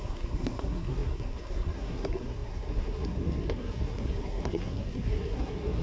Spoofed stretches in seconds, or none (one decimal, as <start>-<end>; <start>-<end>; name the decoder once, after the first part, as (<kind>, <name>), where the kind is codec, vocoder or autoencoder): 0.0-5.8 (codec, SNAC)